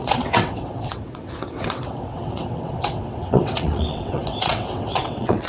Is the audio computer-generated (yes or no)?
yes